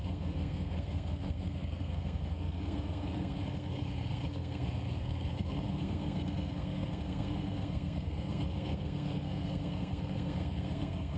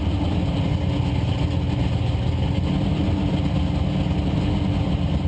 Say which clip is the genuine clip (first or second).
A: second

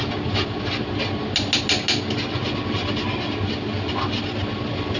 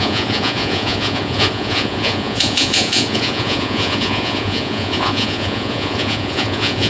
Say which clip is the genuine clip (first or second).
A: first